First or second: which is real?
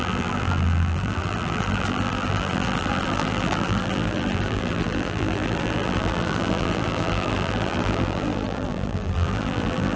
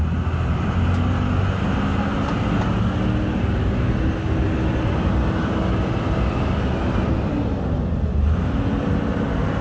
second